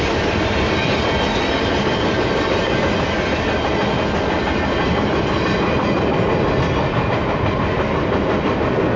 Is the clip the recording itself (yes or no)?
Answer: yes